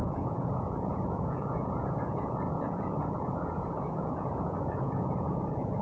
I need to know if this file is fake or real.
fake